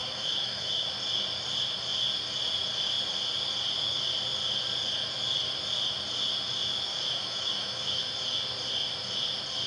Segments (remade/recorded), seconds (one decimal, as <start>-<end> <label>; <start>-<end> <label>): 0.0-0.9 remade; 0.9-6.9 recorded; 6.9-8.1 remade; 8.1-9.7 recorded